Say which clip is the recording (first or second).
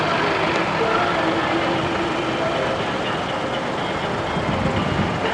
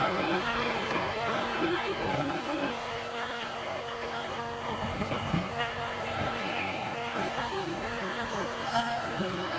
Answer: first